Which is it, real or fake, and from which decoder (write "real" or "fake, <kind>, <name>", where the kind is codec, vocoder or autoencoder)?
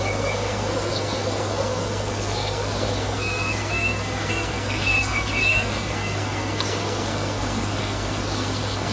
fake, codec, SNAC